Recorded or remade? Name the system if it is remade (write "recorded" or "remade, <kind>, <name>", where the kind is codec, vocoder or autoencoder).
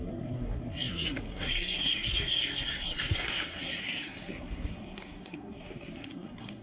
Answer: remade, codec, SNAC